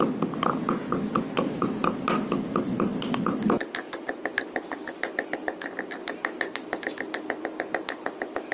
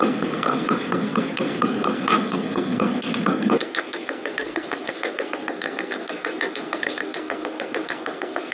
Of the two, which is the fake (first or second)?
second